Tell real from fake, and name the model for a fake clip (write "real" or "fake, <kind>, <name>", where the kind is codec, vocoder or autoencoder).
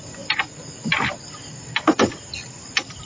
real